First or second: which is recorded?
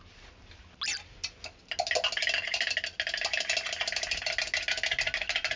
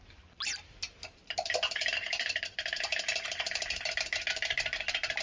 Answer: first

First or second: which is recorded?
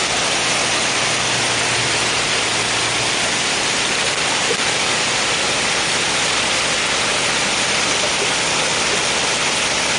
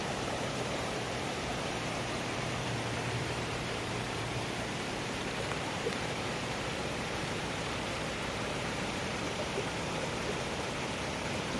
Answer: first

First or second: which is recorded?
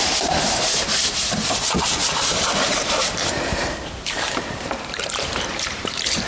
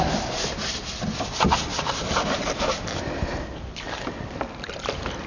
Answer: second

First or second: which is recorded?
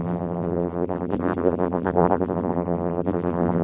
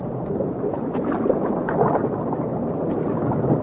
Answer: second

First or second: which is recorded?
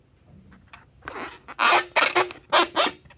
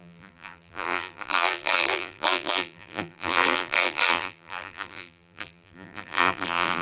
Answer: first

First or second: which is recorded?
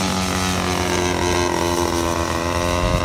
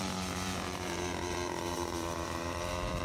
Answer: first